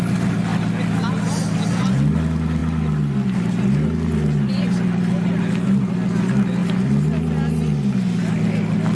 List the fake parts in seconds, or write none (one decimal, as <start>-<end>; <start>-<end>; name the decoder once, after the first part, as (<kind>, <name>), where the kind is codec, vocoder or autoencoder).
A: none